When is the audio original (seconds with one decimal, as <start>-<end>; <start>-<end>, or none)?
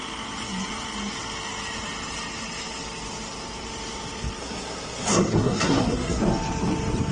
0.0-4.4; 6.2-7.1